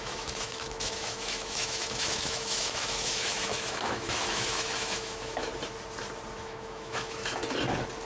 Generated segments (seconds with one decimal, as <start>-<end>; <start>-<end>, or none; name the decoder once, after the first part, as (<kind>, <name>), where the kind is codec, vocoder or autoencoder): 0.0-5.5 (autoencoder, DAC-VAE); 6.3-7.4